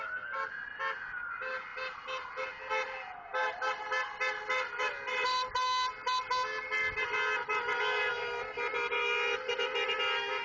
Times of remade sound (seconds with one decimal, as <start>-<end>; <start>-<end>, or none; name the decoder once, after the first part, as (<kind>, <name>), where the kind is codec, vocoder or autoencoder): none